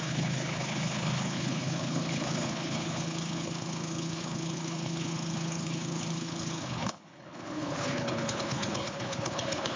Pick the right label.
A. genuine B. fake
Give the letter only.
B